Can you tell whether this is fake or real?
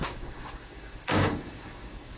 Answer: fake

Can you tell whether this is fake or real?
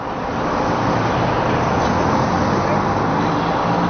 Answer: real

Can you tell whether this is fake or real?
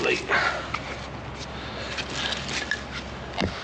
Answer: real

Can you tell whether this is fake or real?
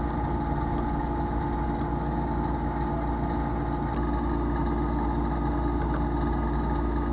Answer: real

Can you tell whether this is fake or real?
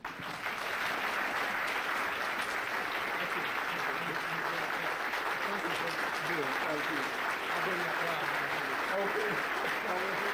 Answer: real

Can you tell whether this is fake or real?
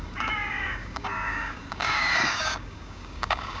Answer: fake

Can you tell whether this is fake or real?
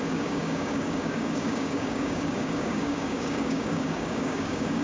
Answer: fake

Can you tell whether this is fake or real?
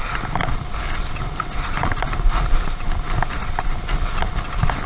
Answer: real